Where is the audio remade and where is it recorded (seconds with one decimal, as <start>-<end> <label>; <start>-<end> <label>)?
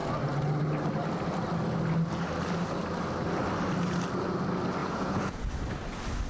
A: 0.0-4.8 recorded; 4.8-5.5 remade; 5.5-6.3 recorded